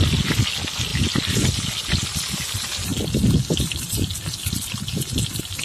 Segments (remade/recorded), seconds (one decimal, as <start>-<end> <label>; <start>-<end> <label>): 0.0-5.6 recorded